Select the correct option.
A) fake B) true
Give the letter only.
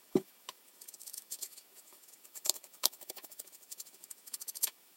A